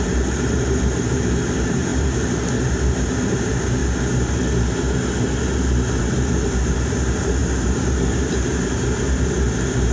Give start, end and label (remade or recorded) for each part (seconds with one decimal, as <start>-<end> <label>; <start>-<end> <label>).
0.0-3.8 remade; 3.8-6.0 recorded; 6.0-9.9 remade

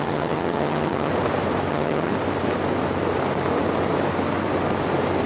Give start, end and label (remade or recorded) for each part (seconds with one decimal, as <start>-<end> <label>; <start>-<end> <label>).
0.0-1.1 remade; 1.1-1.7 recorded; 1.7-2.1 remade; 2.1-5.3 recorded

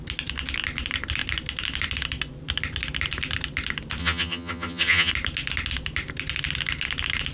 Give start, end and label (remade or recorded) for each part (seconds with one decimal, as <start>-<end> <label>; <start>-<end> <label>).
0.0-4.0 recorded; 4.0-5.1 remade; 5.1-7.3 recorded

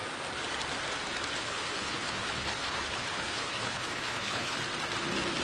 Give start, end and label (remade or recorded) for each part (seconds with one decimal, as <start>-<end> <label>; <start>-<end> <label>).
0.0-1.4 recorded; 1.4-4.6 remade; 4.6-5.4 recorded

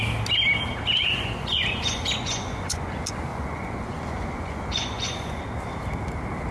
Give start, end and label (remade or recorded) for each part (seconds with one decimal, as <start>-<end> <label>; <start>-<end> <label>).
0.0-1.0 recorded; 1.0-2.9 remade; 2.9-3.3 recorded; 3.3-5.4 remade; 5.4-6.5 recorded